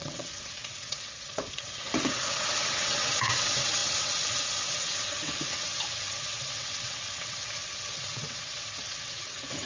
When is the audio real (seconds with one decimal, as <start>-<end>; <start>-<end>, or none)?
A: none